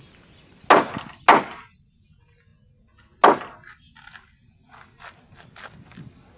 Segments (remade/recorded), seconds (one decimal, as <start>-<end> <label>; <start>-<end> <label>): 0.0-6.4 recorded